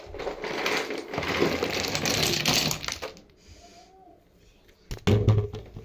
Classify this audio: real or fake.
real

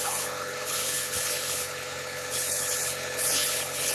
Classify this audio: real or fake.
fake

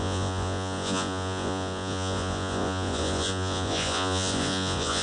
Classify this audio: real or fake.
fake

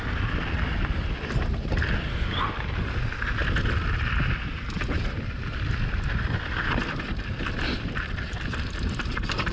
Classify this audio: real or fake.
real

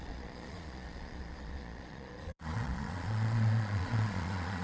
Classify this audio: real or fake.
fake